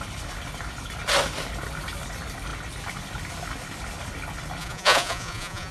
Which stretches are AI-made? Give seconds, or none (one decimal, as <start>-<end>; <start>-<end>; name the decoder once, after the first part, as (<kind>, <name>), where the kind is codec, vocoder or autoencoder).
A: 4.6-5.7 (vocoder, Vocos)